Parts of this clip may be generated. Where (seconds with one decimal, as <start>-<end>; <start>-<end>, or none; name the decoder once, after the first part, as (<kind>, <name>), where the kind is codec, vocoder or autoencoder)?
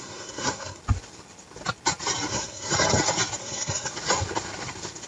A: 0.0-0.8 (codec, SNAC); 2.3-2.7; 3.4-3.9